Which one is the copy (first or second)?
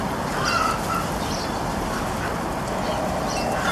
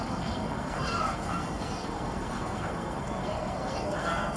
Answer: second